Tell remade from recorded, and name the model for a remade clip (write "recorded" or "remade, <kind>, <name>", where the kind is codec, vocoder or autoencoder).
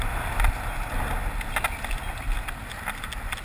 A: recorded